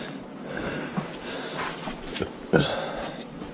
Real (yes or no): yes